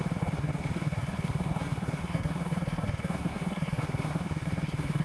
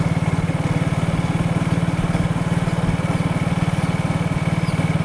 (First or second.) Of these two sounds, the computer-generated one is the first